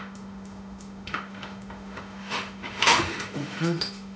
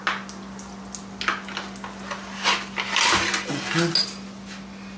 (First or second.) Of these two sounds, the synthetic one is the first